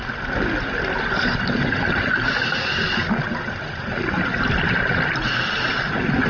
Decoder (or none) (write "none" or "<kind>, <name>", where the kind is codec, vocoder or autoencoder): none